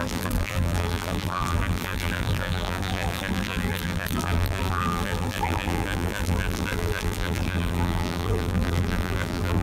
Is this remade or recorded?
remade